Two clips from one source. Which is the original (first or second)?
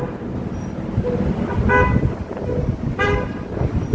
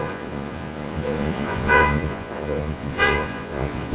first